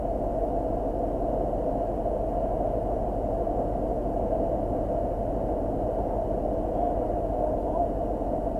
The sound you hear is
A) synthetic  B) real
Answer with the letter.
B